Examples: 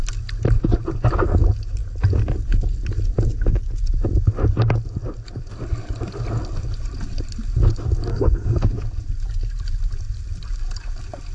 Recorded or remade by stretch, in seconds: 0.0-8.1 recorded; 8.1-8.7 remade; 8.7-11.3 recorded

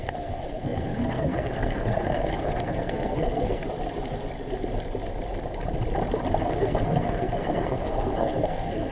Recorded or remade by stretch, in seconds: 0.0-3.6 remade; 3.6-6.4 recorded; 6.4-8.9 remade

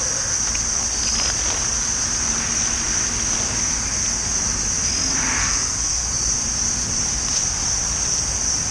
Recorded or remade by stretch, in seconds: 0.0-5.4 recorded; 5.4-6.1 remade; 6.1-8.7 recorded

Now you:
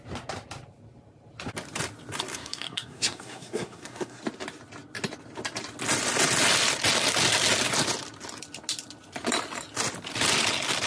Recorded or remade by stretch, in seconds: 0.0-2.3 recorded; 2.3-4.2 remade; 4.2-10.9 recorded

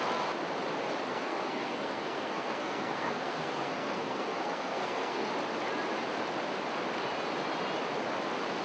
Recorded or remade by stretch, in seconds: 0.0-1.1 recorded; 1.1-5.3 remade; 5.3-8.6 recorded

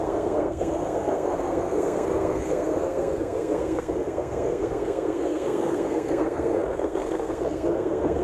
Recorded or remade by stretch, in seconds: 0.0-8.2 remade